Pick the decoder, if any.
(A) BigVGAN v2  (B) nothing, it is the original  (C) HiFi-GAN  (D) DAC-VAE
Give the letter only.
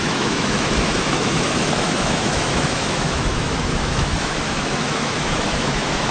D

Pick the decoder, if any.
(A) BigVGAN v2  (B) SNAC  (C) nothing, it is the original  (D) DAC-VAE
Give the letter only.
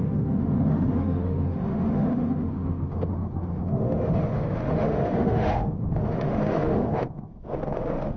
D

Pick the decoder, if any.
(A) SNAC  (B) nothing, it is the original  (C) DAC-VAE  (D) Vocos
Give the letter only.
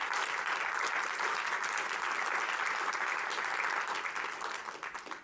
B